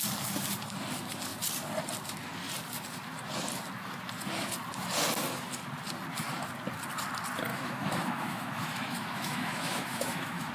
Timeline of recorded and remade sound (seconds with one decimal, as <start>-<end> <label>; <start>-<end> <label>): 0.0-7.5 recorded; 7.5-10.5 remade